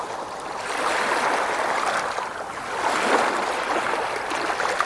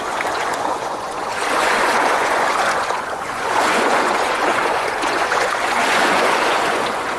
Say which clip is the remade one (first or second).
second